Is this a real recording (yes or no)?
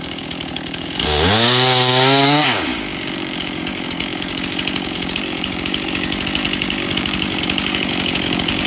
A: no